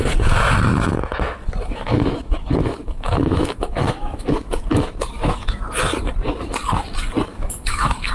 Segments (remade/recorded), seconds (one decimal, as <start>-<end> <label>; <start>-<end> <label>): 0.0-0.7 recorded; 0.7-5.6 remade; 5.6-7.3 recorded; 7.3-8.1 remade